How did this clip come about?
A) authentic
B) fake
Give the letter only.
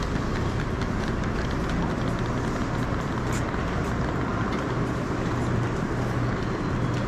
A